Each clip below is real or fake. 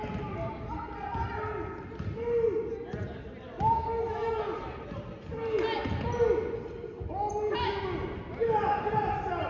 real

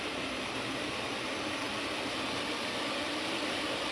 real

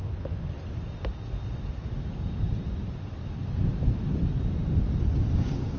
real